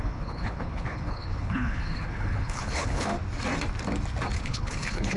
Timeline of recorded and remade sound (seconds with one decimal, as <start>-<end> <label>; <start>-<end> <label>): 0.0-3.1 remade; 3.1-4.4 recorded; 4.4-5.2 remade